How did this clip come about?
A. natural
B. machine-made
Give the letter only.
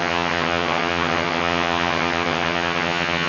B